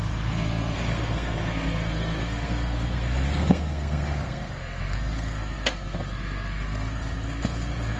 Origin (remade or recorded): remade